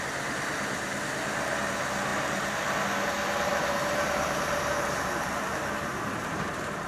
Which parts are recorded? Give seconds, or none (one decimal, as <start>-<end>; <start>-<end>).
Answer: 0.0-3.5

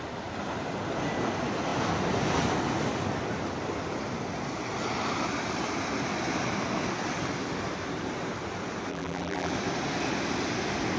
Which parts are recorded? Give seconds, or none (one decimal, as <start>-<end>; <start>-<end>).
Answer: 0.0-8.9; 9.5-11.0

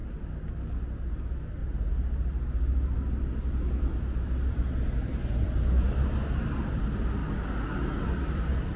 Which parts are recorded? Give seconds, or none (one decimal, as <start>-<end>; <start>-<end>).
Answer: 0.0-1.1; 1.6-6.7; 7.2-8.0

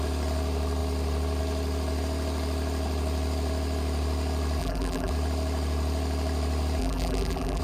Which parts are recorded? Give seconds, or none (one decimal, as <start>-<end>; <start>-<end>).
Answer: 0.0-4.6; 5.1-6.8

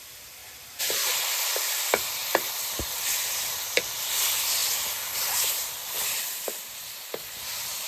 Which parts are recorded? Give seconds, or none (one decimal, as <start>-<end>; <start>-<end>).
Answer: 0.4-1.1; 2.2-3.7

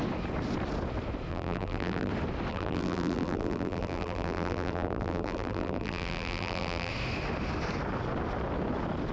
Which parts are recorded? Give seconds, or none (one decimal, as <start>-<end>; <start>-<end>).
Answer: 0.0-1.3; 2.1-2.5; 6.9-9.1

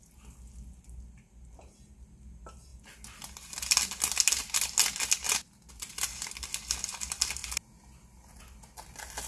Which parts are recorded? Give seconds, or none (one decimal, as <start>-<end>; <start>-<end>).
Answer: 0.0-9.3

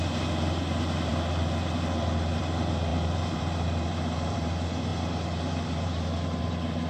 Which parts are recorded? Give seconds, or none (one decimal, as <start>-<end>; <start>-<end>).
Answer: 0.0-2.9; 4.5-4.9; 6.4-6.9